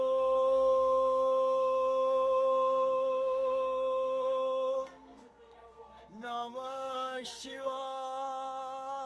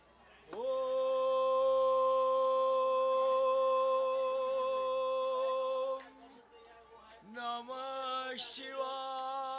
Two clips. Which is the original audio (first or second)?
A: second